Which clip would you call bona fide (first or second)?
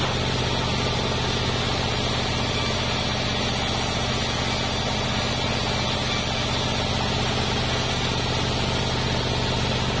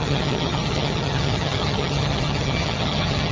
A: first